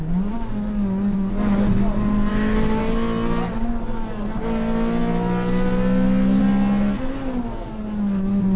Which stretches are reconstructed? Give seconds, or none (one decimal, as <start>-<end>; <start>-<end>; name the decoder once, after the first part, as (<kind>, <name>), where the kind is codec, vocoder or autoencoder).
2.3-2.8 (autoencoder, DAC-VAE)